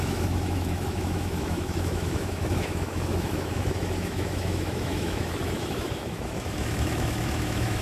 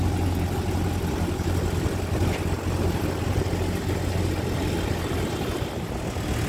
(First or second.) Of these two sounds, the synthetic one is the first